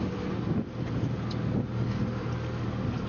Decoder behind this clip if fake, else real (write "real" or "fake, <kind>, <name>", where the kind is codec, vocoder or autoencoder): real